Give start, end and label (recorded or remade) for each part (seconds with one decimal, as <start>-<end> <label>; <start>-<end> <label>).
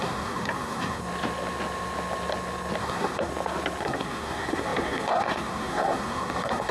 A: 0.0-1.0 remade; 1.0-2.8 recorded; 2.8-3.3 remade; 3.3-3.8 recorded; 3.8-6.7 remade